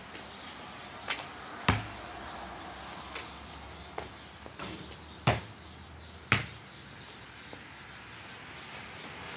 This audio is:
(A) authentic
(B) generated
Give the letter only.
A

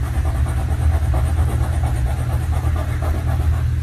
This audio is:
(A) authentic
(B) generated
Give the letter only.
A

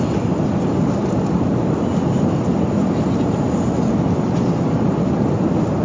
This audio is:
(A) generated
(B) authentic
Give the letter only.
B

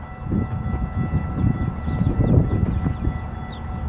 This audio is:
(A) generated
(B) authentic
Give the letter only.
B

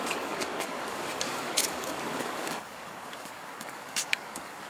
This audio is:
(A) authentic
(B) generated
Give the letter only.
B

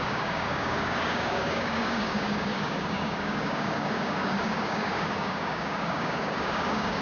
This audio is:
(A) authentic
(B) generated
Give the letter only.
B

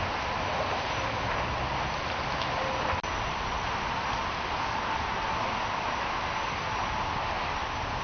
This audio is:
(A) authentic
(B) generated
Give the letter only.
A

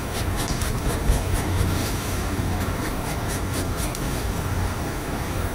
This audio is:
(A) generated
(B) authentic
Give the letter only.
A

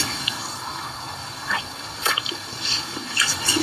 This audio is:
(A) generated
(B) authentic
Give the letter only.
A